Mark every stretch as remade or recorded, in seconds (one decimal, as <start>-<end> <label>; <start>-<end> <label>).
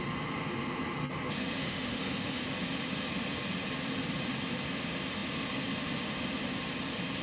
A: 0.0-1.6 recorded; 1.6-2.4 remade; 2.4-7.2 recorded